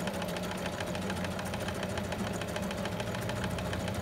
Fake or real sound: real